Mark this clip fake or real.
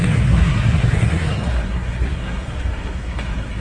fake